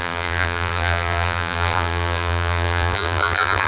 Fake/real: fake